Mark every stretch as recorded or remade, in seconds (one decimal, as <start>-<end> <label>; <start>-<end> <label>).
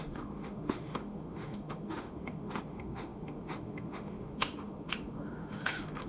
0.0-6.1 remade